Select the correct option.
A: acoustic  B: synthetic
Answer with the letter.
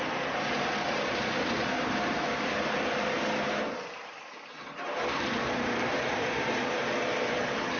B